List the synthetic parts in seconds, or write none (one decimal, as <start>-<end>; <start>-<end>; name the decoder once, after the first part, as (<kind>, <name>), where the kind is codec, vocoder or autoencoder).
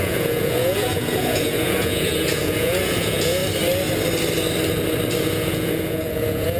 0.0-3.4 (vocoder, Vocos); 5.2-6.6